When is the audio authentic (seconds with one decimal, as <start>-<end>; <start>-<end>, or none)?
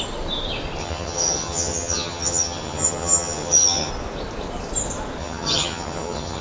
0.0-0.8; 3.9-5.2